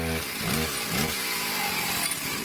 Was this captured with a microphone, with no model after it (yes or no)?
yes